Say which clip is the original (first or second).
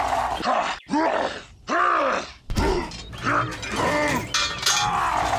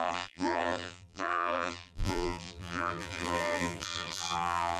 first